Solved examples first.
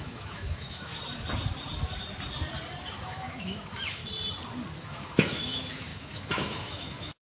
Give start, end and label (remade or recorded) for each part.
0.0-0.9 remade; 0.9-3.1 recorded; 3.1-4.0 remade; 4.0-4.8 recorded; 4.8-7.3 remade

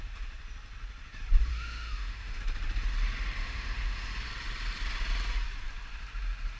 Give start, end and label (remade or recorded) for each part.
0.0-1.5 recorded; 1.5-2.4 remade; 2.4-3.4 recorded; 3.4-4.1 remade; 4.1-6.6 recorded

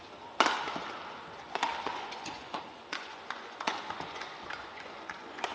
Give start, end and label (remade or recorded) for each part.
0.0-1.9 recorded; 1.9-5.5 remade